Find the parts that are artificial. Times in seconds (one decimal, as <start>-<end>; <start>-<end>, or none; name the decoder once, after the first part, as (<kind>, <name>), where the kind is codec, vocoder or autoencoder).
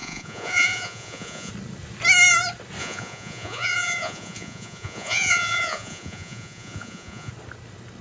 0.0-1.5 (vocoder, Vocos); 2.8-7.3